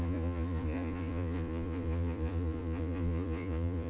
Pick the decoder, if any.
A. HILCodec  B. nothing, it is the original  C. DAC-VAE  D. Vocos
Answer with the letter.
D